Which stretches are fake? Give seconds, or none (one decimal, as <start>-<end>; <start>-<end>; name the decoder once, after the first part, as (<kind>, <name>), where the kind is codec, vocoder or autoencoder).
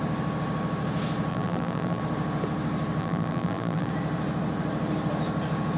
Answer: 1.3-2.0 (vocoder, BigVGAN v2); 3.0-3.9